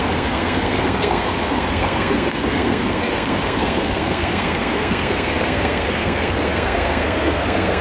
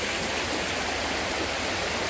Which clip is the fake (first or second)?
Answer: first